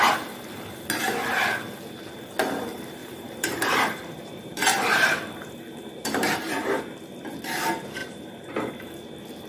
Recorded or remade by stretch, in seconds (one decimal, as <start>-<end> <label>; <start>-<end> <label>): 0.0-3.0 recorded; 3.0-6.8 remade; 6.8-8.0 recorded; 8.0-8.7 remade; 8.7-9.5 recorded